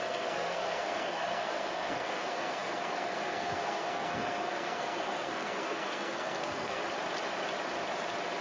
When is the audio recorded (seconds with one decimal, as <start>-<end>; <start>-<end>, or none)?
6.8-8.4